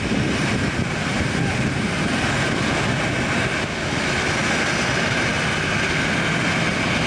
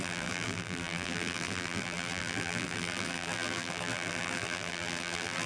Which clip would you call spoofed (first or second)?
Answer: second